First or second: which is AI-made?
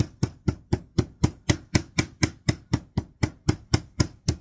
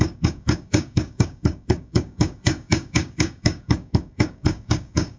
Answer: second